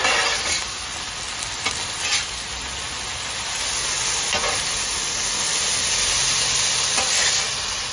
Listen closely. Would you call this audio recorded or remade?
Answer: recorded